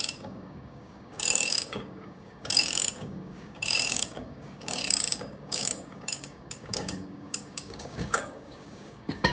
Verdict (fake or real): fake